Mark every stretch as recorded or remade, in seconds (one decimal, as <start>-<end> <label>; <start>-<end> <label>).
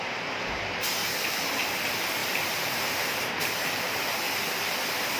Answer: 0.0-4.1 remade; 4.1-5.2 recorded